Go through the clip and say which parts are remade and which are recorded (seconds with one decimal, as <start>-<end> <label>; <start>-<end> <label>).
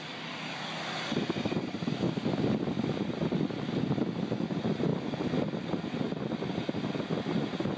0.0-7.8 recorded